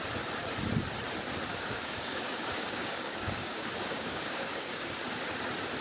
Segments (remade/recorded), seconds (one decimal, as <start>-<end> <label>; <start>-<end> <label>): 0.0-1.5 recorded; 1.5-5.0 remade; 5.0-5.8 recorded

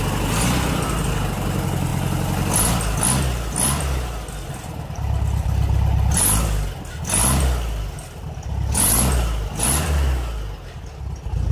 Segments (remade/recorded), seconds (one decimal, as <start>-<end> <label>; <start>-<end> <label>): 0.0-11.5 recorded

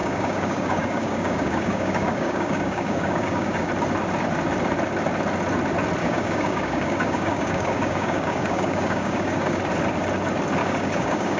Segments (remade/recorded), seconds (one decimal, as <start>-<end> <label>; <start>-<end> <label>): 0.0-3.7 remade; 3.7-6.0 recorded; 6.0-9.6 remade; 9.6-10.6 recorded; 10.6-11.4 remade

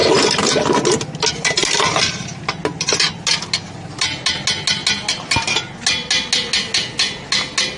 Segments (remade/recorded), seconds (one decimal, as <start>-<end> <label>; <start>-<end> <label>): 0.0-7.8 recorded

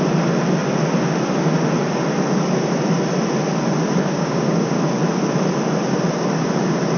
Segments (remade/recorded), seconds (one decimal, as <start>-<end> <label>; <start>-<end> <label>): 0.0-4.0 recorded; 4.0-4.7 remade; 4.7-7.0 recorded